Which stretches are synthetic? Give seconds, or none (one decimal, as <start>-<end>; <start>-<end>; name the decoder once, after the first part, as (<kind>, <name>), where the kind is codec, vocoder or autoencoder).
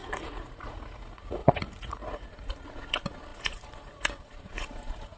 0.0-5.2 (vocoder, Vocos)